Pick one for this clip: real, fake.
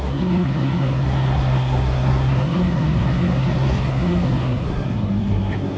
fake